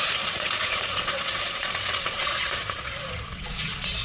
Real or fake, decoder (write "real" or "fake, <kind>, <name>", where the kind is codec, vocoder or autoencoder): fake, vocoder, Vocos